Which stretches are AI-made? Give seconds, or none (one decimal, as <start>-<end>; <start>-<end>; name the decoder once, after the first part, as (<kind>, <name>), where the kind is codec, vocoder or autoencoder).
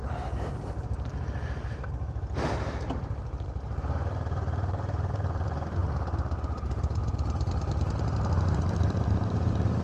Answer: 0.0-1.1 (vocoder, BigVGAN v2); 3.8-5.8; 6.4-7.0; 8.5-9.8